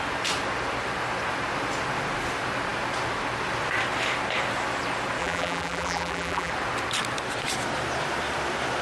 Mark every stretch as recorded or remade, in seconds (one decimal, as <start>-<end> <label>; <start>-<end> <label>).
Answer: 0.0-5.2 recorded; 5.2-6.5 remade; 6.5-8.8 recorded